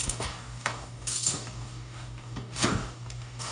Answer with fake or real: fake